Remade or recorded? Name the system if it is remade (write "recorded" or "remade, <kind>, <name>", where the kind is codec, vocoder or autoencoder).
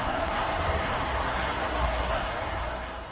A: remade, codec, SNAC